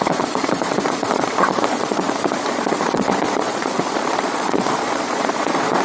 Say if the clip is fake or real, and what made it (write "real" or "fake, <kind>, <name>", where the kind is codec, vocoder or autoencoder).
fake, vocoder, Vocos